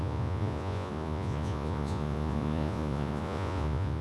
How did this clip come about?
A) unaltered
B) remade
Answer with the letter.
B